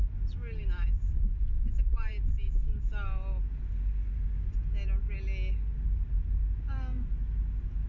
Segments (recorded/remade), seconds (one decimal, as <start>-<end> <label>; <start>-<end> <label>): 0.0-7.9 recorded